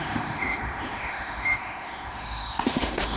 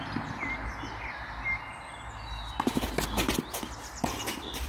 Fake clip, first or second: first